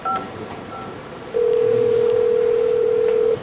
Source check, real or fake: fake